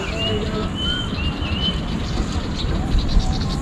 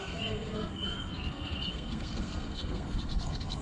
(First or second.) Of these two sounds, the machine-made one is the second